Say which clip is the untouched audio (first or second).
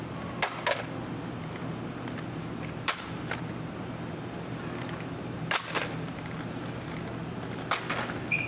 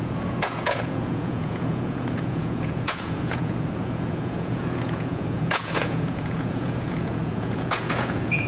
first